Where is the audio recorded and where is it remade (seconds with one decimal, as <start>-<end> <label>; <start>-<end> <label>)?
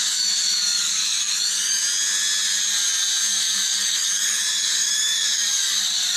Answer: 0.0-1.8 remade; 1.8-3.3 recorded; 3.3-6.2 remade